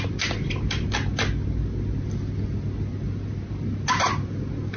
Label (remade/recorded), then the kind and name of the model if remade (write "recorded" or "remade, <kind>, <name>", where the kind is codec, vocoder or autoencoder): recorded